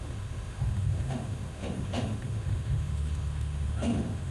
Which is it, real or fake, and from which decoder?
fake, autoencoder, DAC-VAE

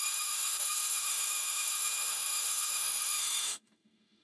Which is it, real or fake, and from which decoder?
fake, autoencoder, DAC-VAE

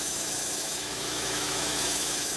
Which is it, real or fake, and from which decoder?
fake, autoencoder, DAC-VAE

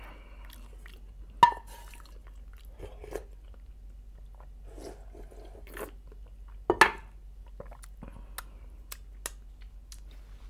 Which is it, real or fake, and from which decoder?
real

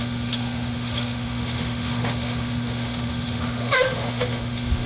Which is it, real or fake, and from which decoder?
fake, autoencoder, DAC-VAE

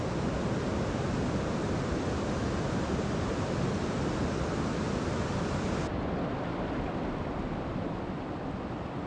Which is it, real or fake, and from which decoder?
real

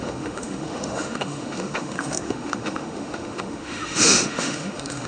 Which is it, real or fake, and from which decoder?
fake, autoencoder, DAC-VAE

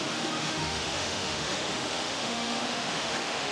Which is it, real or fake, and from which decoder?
fake, autoencoder, DAC-VAE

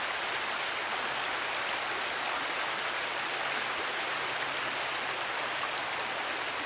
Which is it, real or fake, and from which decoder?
real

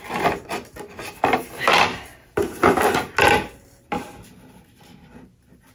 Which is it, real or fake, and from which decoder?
real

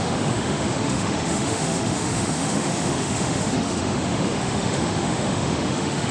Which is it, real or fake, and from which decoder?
fake, autoencoder, DAC-VAE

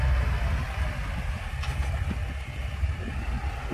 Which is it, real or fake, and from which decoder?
real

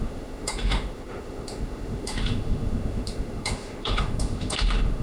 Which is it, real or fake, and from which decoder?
fake, autoencoder, DAC-VAE